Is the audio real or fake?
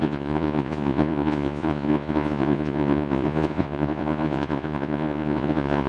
fake